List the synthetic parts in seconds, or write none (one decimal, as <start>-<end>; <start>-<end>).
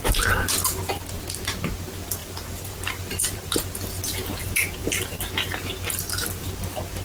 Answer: 2.2-3.7